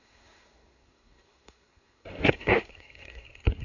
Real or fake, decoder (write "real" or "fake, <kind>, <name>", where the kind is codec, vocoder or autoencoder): fake, codec, SNAC